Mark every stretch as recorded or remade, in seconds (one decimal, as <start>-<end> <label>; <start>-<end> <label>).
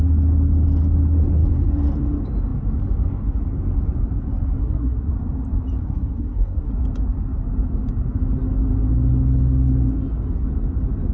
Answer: 0.0-4.6 recorded; 4.6-5.1 remade; 5.1-5.8 recorded; 5.8-6.7 remade; 6.7-11.1 recorded